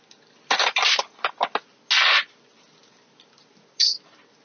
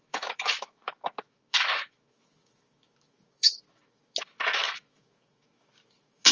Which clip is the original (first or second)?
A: first